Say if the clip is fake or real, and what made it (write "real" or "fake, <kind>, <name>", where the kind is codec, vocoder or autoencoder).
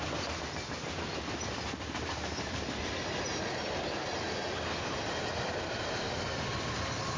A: real